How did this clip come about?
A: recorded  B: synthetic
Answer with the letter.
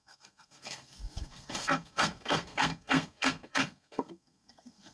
B